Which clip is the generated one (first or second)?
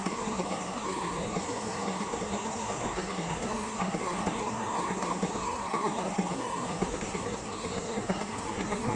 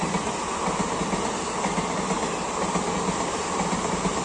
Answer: first